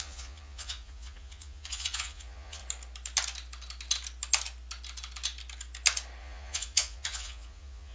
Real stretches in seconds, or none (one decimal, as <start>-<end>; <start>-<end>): 2.6-6.2